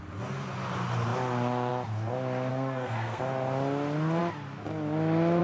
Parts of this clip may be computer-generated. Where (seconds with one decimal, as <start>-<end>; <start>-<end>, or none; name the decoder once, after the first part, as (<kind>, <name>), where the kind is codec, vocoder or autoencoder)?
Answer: 2.5-3.2 (codec, SNAC)